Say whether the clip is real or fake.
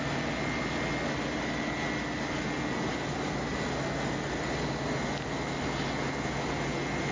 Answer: real